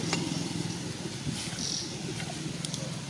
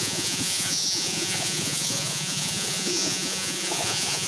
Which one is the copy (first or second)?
second